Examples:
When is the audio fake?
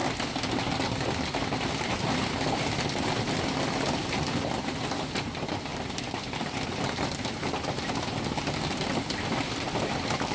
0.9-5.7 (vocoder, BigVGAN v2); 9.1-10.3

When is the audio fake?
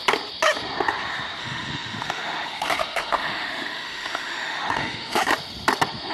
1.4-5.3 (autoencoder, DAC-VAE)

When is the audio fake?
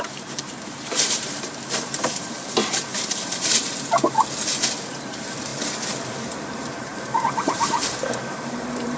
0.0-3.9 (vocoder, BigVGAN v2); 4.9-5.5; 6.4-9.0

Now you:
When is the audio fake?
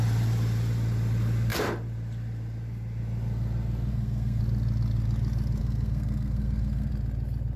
3.9-4.4 (codec, SNAC); 5.6-6.9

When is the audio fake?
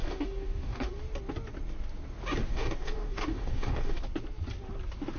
0.0-0.9 (codec, DAC); 2.5-4.0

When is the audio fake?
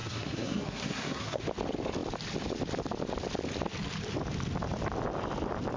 0.0-1.4 (codec, SNAC)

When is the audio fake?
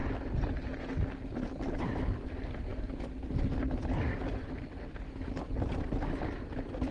none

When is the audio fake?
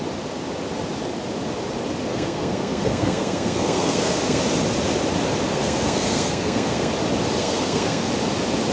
2.1-4.4 (codec, SNAC); 5.5-6.9; 7.4-8.1